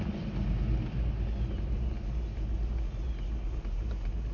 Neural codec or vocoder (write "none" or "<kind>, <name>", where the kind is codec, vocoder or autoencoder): none